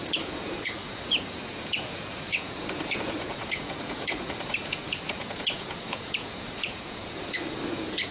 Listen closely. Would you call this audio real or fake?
fake